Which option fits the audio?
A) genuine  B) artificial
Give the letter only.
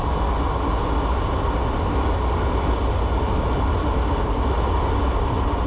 A